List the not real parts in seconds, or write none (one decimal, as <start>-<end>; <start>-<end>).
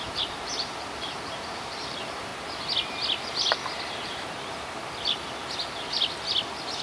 0.0-2.3